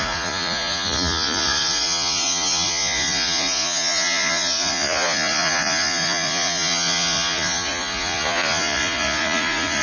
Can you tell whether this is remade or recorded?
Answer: remade